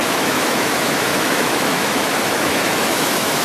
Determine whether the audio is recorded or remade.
remade